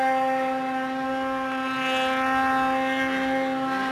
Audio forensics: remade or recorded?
recorded